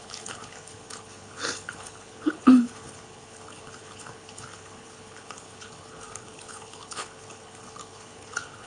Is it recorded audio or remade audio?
remade